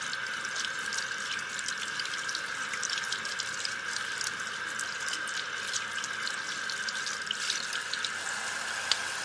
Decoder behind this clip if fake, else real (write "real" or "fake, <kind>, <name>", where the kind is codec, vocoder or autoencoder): real